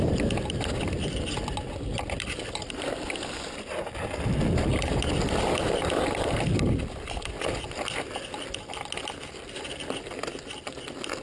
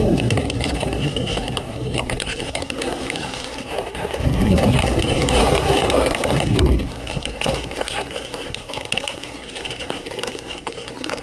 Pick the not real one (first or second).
second